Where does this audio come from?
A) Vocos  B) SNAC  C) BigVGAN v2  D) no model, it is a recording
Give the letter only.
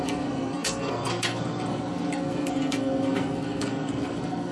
B